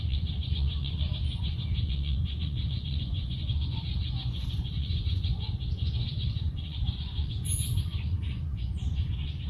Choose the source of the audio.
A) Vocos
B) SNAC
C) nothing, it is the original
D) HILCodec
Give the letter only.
A